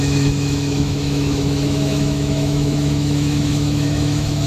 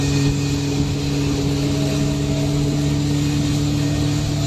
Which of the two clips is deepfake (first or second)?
first